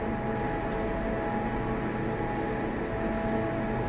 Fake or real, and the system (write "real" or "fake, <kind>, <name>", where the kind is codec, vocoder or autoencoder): real